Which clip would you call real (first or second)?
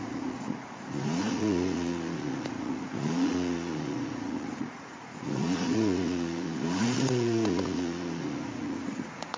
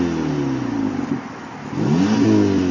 second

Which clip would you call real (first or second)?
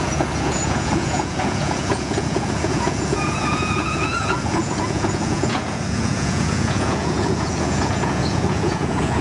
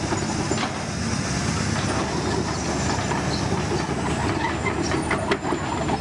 second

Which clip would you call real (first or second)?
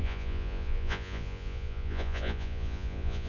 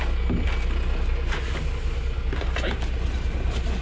second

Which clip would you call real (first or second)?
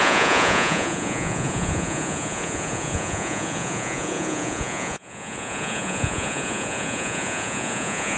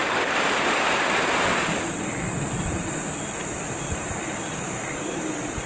second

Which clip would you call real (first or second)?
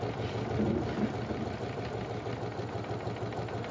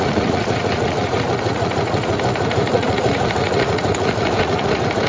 first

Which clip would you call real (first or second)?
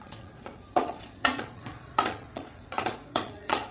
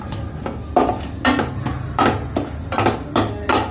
second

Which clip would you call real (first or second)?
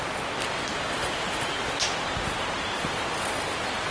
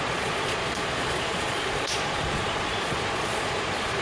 first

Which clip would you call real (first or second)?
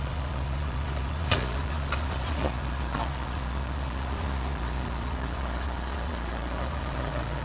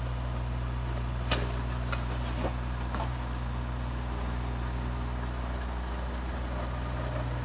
second